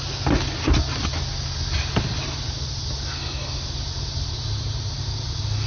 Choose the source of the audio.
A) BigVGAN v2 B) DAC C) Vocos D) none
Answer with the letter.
D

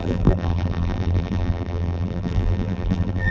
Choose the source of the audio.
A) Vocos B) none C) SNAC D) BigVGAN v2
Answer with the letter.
D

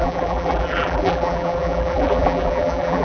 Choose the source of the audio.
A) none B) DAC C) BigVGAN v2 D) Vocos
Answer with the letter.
C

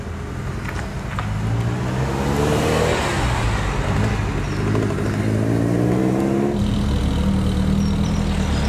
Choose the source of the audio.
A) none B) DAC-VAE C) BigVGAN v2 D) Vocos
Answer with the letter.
A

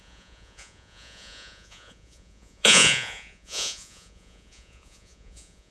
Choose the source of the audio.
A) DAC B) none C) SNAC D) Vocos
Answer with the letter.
D